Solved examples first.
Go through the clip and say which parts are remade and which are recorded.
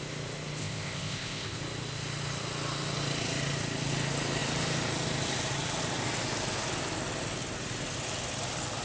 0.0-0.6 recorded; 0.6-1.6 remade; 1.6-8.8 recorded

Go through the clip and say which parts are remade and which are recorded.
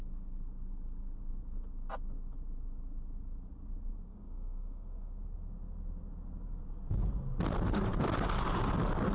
0.0-4.1 recorded; 4.1-5.1 remade; 5.1-9.1 recorded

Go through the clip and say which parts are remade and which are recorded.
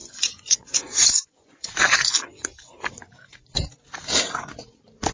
0.0-1.7 remade; 1.7-5.1 recorded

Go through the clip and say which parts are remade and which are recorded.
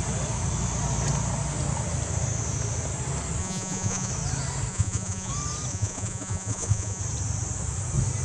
0.0-3.4 recorded; 3.4-4.1 remade; 4.1-4.7 recorded; 4.7-5.3 remade; 5.3-5.7 recorded; 5.7-7.0 remade; 7.0-8.2 recorded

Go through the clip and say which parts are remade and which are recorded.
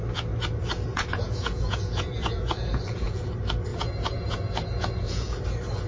0.0-0.9 recorded; 0.9-3.3 remade; 3.3-3.7 recorded; 3.7-5.4 remade; 5.4-5.9 recorded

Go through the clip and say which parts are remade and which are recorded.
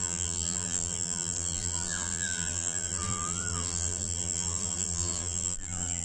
0.0-6.0 remade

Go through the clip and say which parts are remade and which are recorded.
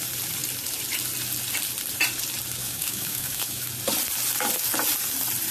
0.0-2.6 recorded; 2.6-3.7 remade; 3.7-5.5 recorded